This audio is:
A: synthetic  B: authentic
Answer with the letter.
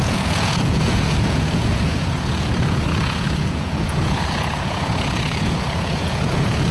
A